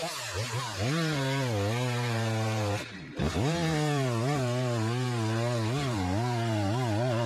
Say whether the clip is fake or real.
fake